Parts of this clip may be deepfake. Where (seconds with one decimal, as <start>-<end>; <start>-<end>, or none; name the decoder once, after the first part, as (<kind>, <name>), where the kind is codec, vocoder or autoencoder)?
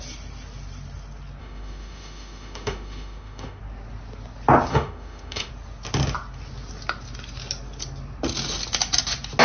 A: 1.4-3.6 (autoencoder, DAC-VAE); 4.7-5.5